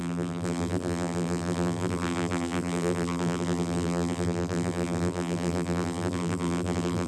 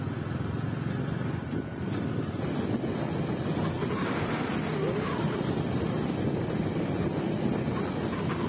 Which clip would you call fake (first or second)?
first